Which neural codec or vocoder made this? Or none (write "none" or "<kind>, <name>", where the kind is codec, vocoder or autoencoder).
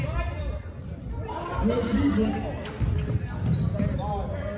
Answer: none